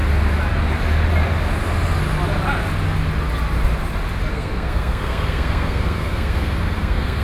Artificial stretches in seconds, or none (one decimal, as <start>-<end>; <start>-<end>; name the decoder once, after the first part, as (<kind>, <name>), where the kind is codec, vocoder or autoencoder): 4.3-7.2 (codec, SNAC)